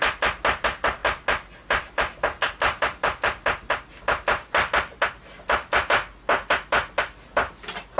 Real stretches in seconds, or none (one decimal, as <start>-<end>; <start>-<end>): 0.0-8.0